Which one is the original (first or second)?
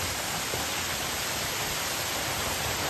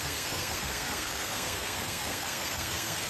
first